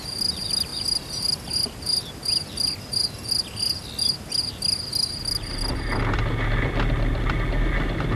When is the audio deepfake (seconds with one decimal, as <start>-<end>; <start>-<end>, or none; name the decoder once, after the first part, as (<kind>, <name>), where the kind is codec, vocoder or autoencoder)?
none